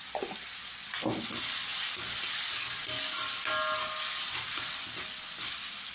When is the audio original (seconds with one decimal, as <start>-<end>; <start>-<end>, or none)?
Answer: 0.0-5.9